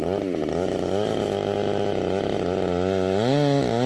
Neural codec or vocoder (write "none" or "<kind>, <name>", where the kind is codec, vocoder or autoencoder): none